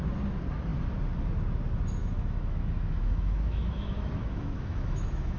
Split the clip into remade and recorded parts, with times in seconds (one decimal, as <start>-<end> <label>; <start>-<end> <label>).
0.0-2.0 recorded; 2.0-5.4 remade